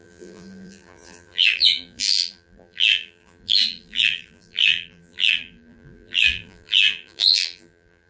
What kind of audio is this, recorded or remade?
remade